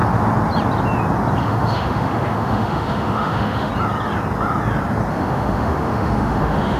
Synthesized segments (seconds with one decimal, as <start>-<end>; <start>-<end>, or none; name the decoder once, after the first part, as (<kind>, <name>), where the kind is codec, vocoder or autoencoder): 1.4-3.7 (autoencoder, DAC-VAE); 5.1-6.8